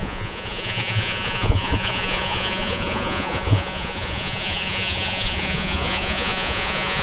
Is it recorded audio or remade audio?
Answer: remade